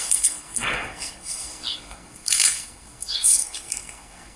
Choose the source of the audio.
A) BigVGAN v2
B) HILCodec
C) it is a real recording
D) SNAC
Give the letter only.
D